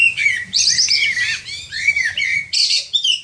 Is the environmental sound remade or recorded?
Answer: remade